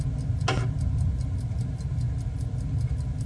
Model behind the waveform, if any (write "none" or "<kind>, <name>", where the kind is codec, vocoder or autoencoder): none